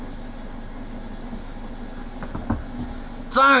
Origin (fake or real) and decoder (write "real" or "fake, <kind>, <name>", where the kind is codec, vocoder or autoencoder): real